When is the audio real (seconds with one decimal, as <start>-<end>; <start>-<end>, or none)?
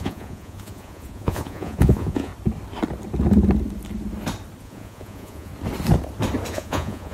2.3-4.6; 5.5-6.5